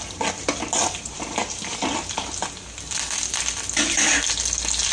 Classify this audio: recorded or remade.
recorded